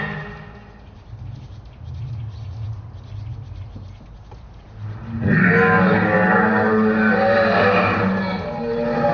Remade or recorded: recorded